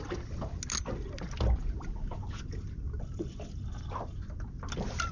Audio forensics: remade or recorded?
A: recorded